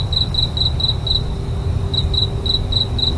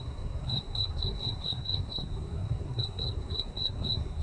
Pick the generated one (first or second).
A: second